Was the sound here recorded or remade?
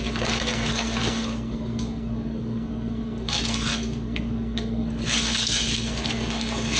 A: remade